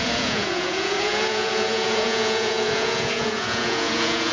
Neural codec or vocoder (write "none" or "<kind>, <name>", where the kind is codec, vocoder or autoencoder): vocoder, Vocos